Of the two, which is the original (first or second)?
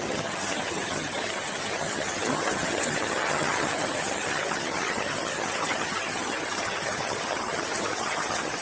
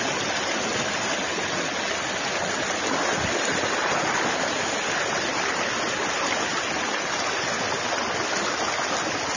second